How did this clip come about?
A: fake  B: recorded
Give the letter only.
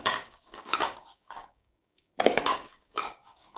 A